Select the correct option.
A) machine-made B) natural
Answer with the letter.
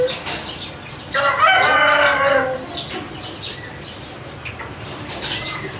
B